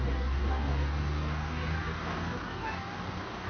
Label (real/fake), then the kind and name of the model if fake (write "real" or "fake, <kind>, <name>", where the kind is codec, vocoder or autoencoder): fake, codec, DAC